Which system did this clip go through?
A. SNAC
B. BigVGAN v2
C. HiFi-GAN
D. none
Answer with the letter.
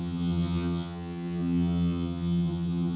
C